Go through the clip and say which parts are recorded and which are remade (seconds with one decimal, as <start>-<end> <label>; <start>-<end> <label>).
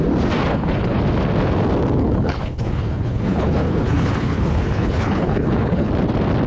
0.0-0.5 recorded; 0.5-1.0 remade; 1.0-2.0 recorded; 2.0-5.9 remade; 5.9-6.5 recorded